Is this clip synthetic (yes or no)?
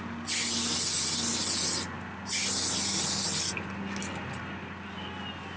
no